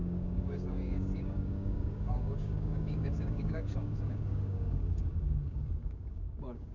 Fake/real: fake